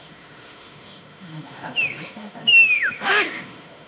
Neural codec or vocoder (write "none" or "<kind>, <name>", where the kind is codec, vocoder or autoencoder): autoencoder, DAC-VAE